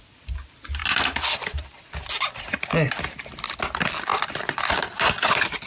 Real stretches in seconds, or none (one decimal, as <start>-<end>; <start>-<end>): 0.0-0.8; 3.6-4.1; 4.8-5.7